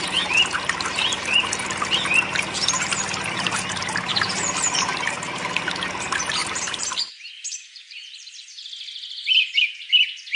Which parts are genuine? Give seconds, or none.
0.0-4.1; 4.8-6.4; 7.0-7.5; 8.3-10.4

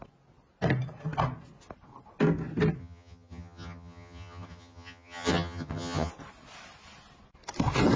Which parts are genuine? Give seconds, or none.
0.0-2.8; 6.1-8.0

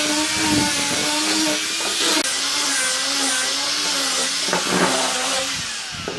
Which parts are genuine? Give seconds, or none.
0.0-6.2

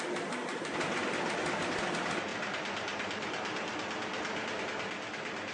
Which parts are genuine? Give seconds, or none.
0.0-5.5

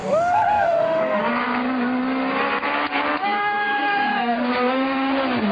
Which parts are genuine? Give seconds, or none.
1.2-3.2; 5.1-5.5

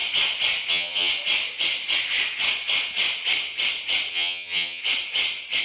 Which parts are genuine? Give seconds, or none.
0.0-0.7; 1.1-4.1; 4.8-5.6

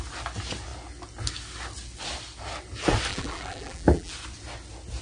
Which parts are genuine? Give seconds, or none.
0.0-3.1; 4.1-5.0

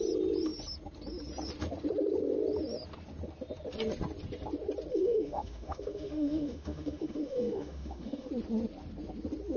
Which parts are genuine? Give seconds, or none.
0.0-4.9; 8.3-9.6